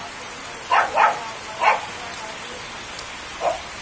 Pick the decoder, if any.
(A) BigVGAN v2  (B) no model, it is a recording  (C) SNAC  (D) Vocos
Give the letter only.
B